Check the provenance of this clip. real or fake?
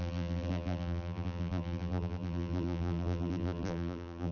fake